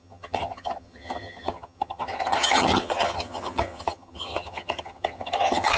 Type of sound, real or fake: fake